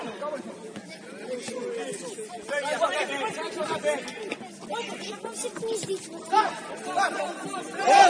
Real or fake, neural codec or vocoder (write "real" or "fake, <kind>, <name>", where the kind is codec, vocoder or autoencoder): real